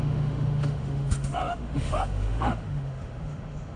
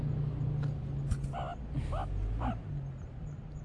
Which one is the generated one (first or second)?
first